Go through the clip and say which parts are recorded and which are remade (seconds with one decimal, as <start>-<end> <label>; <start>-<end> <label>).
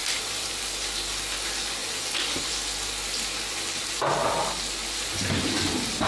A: 0.0-0.5 remade; 0.5-1.8 recorded; 1.8-2.5 remade; 2.5-3.8 recorded; 3.8-4.3 remade; 4.3-6.1 recorded